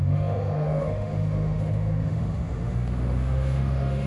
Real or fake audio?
fake